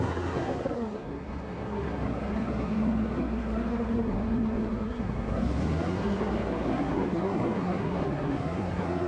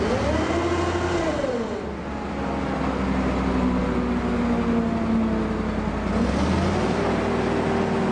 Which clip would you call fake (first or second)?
first